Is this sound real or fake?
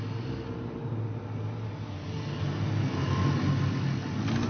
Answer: real